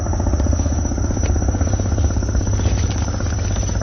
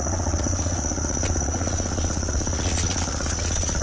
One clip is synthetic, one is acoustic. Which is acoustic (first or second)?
first